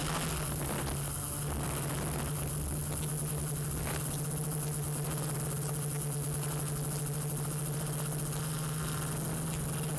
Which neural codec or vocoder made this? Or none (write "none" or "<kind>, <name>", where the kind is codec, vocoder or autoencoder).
none